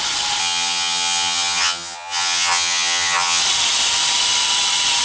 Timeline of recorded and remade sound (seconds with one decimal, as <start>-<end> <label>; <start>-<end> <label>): 0.0-0.4 recorded; 0.4-3.4 remade; 3.4-5.0 recorded